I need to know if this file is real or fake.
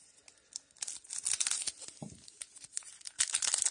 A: real